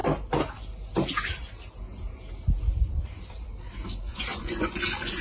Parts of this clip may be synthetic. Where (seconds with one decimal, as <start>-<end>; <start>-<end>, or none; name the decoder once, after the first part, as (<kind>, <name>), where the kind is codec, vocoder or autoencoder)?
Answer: 4.1-5.2 (vocoder, Vocos)